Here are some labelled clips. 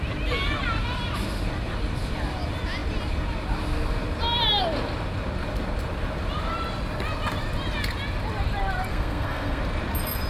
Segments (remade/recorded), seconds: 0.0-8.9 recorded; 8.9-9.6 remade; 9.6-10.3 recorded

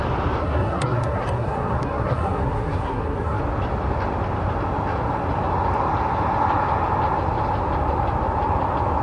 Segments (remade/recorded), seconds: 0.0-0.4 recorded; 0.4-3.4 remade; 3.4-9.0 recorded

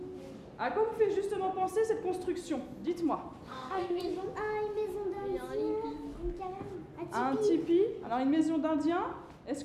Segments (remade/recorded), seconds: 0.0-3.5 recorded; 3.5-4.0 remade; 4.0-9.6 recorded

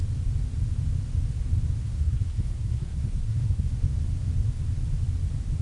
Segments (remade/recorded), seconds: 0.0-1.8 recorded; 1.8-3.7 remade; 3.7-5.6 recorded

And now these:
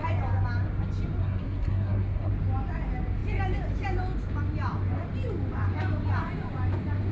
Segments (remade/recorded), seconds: 0.0-1.2 recorded; 1.2-2.3 remade; 2.3-7.1 recorded

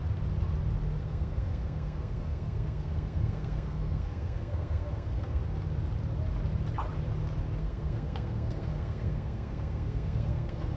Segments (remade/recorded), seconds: 0.0-1.0 recorded; 1.0-5.4 remade; 5.4-7.6 recorded; 7.6-10.8 remade

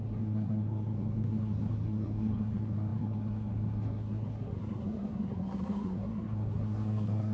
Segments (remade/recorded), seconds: 0.0-7.3 remade